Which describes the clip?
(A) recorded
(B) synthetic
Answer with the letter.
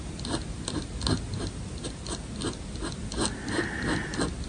A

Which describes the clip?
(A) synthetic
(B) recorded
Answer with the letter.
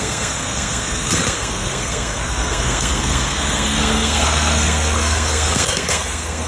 A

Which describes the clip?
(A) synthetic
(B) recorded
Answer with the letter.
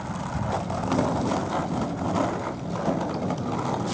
B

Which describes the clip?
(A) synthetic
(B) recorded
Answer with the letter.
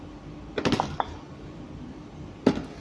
B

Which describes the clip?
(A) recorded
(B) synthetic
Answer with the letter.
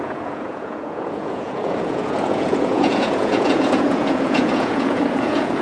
B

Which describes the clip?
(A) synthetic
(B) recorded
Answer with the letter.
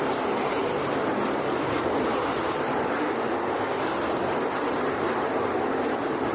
A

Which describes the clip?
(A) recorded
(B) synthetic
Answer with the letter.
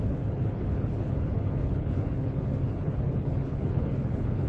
B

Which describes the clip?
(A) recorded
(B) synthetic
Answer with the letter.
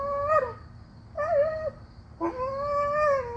A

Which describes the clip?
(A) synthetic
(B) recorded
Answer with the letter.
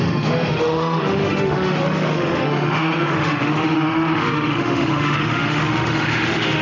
A